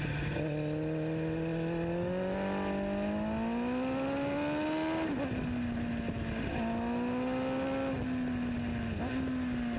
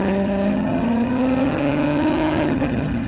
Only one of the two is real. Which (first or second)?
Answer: first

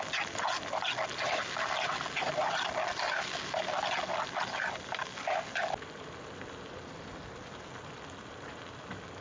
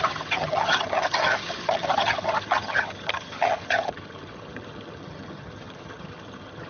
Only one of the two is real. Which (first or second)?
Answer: first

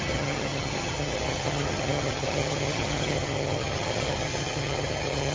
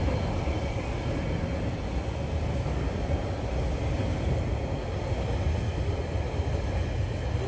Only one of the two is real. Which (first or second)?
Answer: second